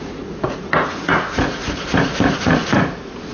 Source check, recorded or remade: remade